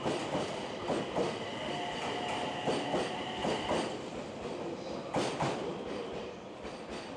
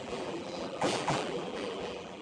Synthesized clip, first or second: second